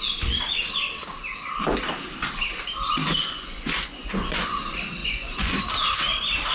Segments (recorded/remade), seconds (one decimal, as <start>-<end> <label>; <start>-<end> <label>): 0.0-3.2 recorded; 3.2-4.6 remade; 4.6-5.0 recorded; 5.0-5.6 remade; 5.6-6.5 recorded